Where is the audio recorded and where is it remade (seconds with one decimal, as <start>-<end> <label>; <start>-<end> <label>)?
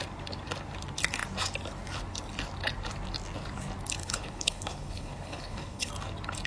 0.0-4.0 recorded; 4.0-5.9 remade; 5.9-6.5 recorded